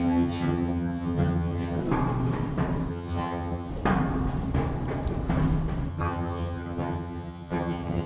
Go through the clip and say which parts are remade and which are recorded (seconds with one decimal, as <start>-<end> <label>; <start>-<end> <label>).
0.0-1.8 remade; 1.8-2.9 recorded; 2.9-3.7 remade; 3.7-5.9 recorded; 5.9-8.1 remade